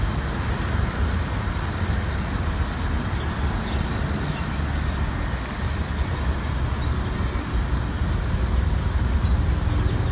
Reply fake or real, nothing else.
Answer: real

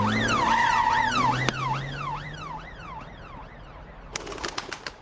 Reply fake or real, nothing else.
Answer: real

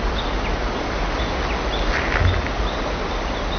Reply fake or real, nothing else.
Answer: real